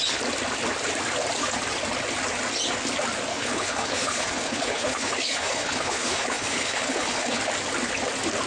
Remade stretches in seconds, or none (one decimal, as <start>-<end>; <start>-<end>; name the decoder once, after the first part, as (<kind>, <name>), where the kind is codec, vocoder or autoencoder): 3.3-7.4 (codec, HILCodec)

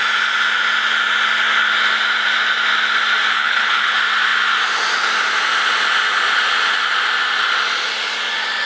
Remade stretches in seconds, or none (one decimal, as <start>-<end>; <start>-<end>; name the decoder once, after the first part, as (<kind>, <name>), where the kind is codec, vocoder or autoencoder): 3.3-3.9 (codec, HILCodec)

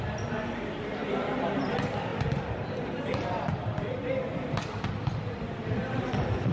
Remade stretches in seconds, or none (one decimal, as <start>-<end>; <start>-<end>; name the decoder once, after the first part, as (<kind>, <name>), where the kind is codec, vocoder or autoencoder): none

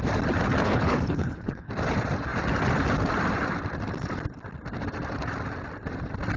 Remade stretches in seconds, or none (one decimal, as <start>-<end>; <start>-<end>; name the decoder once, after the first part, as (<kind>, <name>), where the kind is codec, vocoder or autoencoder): 0.6-1.7 (codec, HILCodec)

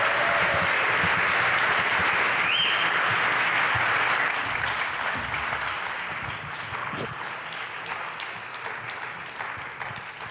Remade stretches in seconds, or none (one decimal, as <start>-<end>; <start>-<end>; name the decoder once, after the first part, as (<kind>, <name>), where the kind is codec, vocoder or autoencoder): 6.8-7.3 (codec, HILCodec)